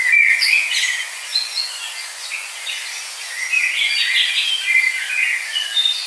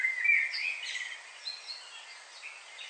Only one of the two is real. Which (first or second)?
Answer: second